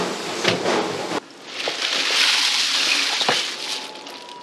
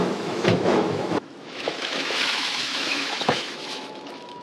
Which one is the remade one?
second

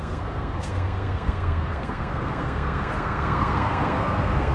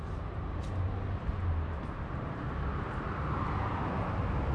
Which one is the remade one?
first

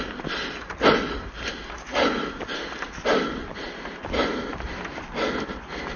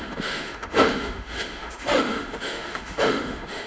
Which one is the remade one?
second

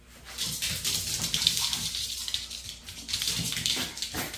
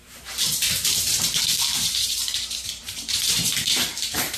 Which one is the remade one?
second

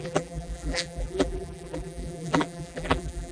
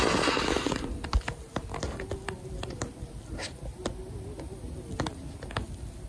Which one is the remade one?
first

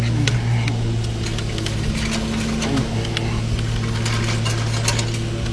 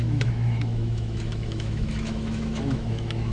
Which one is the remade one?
second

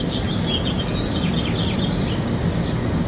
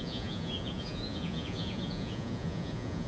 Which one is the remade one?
second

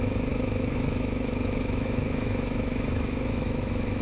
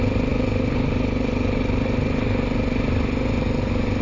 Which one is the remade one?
first